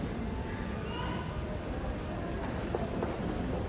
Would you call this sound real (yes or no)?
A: yes